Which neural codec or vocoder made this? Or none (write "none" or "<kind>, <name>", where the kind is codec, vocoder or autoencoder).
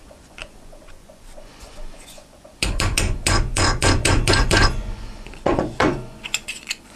vocoder, Vocos